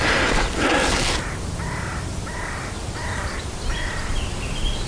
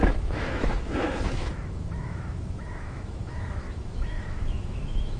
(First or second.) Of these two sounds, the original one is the first